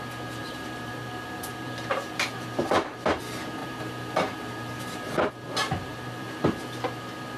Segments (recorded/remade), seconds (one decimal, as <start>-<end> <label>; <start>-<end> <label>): 0.0-0.4 recorded; 0.4-3.2 remade; 3.2-3.6 recorded; 3.6-5.3 remade; 5.3-5.9 recorded; 5.9-6.6 remade; 6.6-7.4 recorded